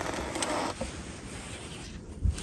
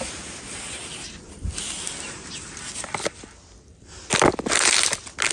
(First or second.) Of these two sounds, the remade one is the first